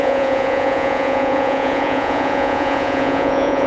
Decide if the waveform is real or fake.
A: fake